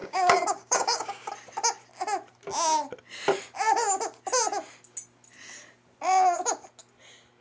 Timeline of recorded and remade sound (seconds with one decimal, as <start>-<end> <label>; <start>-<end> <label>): 0.0-1.3 remade; 1.3-7.4 recorded